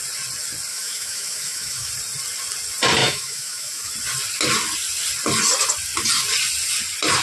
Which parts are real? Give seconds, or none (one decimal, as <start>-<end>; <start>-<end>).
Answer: 0.0-0.7; 1.9-3.0; 3.9-7.2